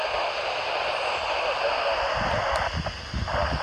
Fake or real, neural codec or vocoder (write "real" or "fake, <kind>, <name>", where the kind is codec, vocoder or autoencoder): real